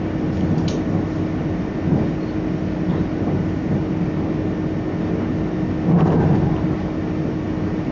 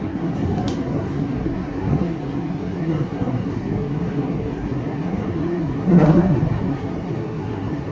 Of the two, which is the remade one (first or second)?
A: second